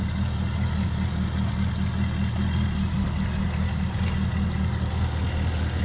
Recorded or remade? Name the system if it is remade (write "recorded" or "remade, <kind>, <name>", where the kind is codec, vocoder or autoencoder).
recorded